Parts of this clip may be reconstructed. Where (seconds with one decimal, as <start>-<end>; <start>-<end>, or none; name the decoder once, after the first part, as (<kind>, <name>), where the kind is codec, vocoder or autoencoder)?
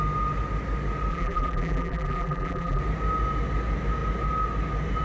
1.1-2.8 (vocoder, BigVGAN v2)